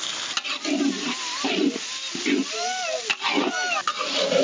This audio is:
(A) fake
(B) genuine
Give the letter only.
B